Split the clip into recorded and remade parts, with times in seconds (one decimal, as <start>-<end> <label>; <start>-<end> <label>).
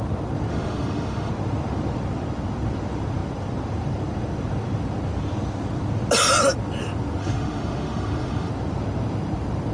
0.0-0.5 recorded; 0.5-1.3 remade; 1.3-7.2 recorded; 7.2-8.5 remade; 8.5-9.7 recorded